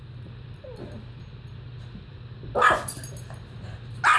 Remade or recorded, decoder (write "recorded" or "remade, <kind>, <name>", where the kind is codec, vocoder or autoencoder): recorded